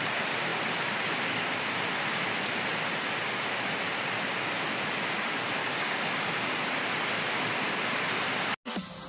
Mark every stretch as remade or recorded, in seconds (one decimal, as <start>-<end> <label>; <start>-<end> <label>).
0.0-5.6 recorded; 5.6-6.4 remade; 6.4-9.1 recorded